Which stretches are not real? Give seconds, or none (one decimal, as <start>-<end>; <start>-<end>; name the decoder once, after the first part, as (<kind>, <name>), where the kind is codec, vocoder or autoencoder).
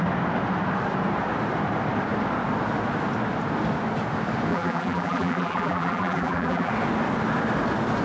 4.5-6.7 (vocoder, BigVGAN v2)